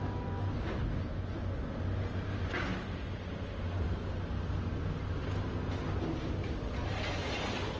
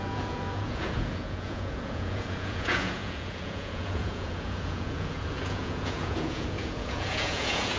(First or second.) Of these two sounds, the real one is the first